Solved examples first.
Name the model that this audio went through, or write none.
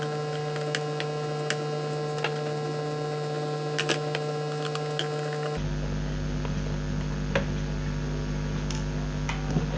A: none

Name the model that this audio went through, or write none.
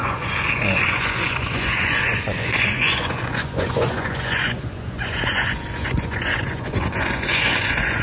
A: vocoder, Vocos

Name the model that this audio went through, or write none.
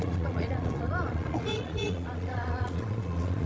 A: vocoder, Vocos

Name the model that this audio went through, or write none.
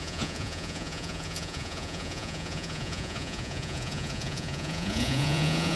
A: vocoder, Vocos